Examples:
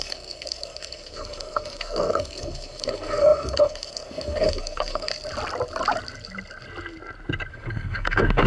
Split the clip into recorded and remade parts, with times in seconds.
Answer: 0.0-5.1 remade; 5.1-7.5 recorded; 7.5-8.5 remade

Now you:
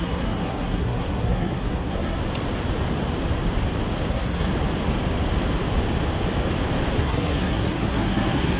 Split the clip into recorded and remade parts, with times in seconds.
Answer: 0.0-2.2 remade; 2.2-4.1 recorded; 4.1-4.5 remade; 4.5-7.0 recorded; 7.0-8.6 remade

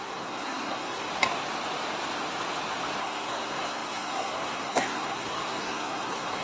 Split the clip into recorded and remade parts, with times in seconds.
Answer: 0.0-1.1 remade; 1.1-3.0 recorded; 3.0-6.4 remade

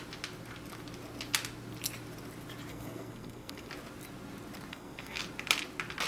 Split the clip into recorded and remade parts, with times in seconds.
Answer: 0.0-2.7 recorded; 2.7-3.7 remade; 3.7-4.7 recorded; 4.7-5.2 remade; 5.2-6.1 recorded

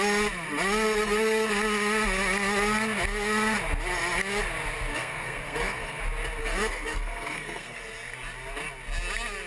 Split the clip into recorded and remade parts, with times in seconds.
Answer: 0.0-4.9 recorded; 4.9-6.0 remade; 6.0-6.4 recorded; 6.4-7.8 remade; 7.8-9.5 recorded

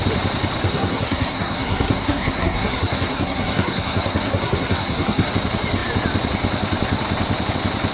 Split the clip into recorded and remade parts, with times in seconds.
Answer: 0.0-0.6 recorded; 0.6-5.3 remade; 5.3-7.9 recorded

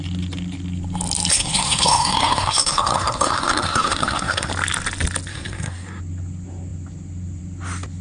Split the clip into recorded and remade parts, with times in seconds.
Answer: 0.0-1.3 recorded; 1.3-4.5 remade; 4.5-5.3 recorded; 5.3-6.0 remade; 6.0-8.0 recorded

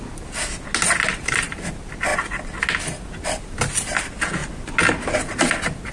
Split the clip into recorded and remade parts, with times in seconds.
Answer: 0.0-5.9 recorded